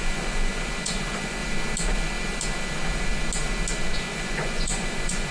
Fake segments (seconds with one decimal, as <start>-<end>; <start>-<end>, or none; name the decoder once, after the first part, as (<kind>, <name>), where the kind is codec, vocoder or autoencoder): 0.0-1.4 (vocoder, Vocos); 4.0-5.3